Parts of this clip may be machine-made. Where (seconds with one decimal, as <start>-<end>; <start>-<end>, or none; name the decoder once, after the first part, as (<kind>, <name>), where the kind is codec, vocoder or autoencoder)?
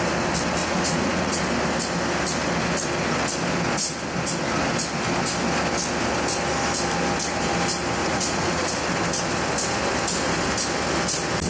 0.6-1.4 (vocoder, Vocos); 8.0-8.7